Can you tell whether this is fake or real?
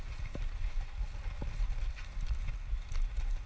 real